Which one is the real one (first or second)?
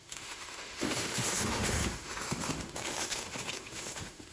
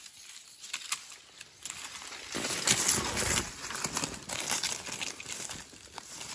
second